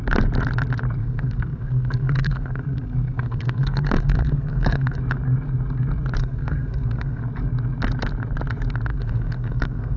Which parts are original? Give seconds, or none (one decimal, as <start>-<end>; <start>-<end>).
0.0-1.0; 5.0-6.2; 7.2-8.9